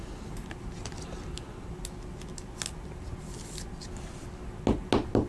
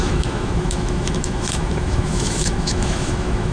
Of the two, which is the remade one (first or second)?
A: second